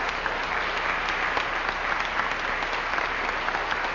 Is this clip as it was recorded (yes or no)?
yes